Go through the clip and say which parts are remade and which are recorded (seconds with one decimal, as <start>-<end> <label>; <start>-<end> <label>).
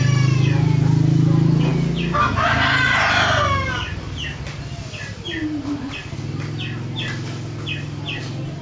0.0-8.6 recorded